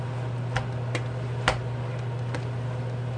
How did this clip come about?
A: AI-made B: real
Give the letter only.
B